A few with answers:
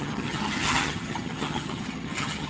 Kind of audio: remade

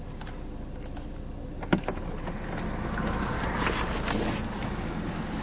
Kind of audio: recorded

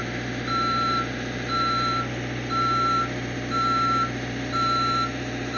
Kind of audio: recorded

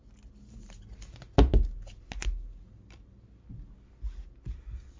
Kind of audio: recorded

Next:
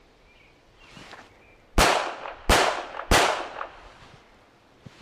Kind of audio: recorded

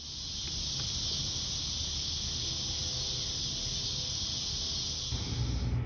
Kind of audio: recorded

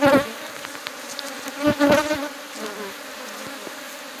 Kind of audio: recorded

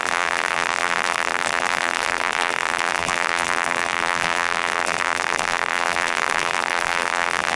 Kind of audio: remade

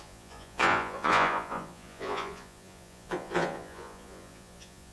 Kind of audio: remade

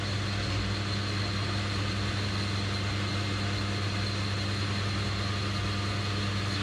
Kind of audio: recorded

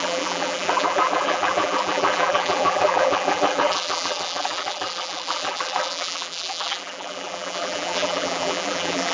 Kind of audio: remade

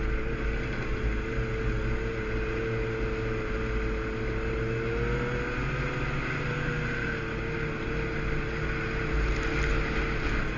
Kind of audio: recorded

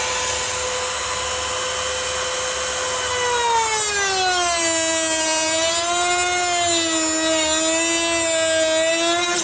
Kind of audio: recorded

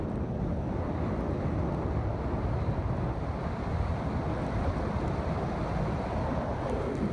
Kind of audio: recorded